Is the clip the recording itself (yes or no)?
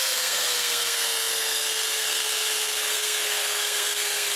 no